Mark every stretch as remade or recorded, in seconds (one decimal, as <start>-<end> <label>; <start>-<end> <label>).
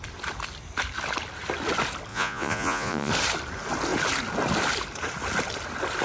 0.0-2.1 recorded; 2.1-3.1 remade; 3.1-6.0 recorded